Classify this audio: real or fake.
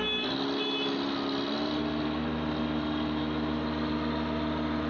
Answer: real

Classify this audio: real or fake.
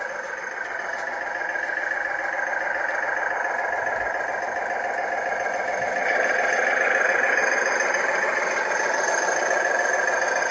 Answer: real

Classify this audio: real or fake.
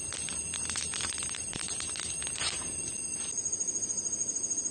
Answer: real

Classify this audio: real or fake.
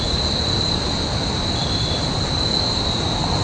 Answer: real